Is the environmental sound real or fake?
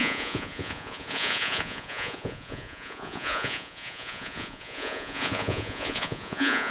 fake